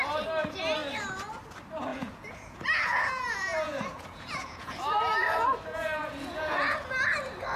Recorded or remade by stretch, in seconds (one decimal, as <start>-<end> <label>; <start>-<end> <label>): 0.0-1.9 recorded; 1.9-4.9 remade; 4.9-5.7 recorded; 5.7-6.8 remade; 6.8-7.6 recorded